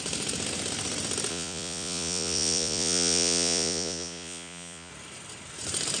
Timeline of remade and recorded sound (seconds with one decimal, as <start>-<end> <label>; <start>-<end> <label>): 0.0-1.3 recorded; 1.3-4.9 remade; 4.9-6.0 recorded